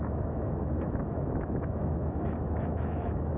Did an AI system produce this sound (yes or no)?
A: yes